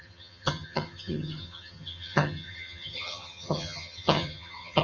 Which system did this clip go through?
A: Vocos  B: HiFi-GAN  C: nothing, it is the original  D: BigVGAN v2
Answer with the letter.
B